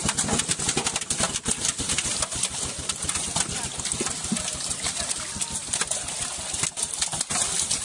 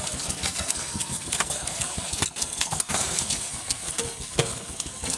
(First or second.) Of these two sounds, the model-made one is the second